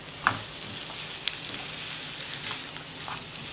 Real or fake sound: real